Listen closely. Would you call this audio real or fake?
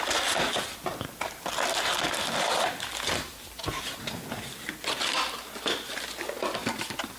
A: real